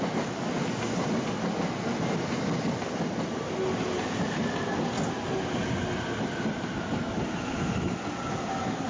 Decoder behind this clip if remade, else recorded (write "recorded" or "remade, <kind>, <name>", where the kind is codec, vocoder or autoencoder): recorded